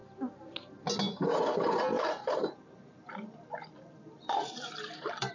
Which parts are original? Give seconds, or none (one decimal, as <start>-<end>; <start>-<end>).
0.0-1.9